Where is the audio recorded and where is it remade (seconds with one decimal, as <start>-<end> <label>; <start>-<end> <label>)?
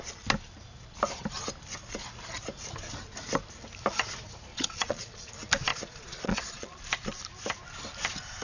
0.0-4.5 recorded; 4.5-5.3 remade; 5.3-5.7 recorded; 5.7-6.8 remade; 6.8-8.4 recorded